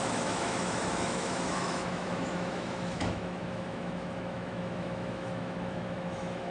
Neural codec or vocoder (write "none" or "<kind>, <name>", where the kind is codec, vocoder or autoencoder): autoencoder, DAC-VAE